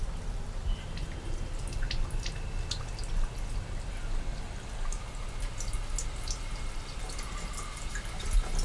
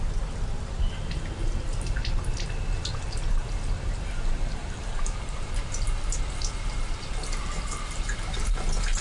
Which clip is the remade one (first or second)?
second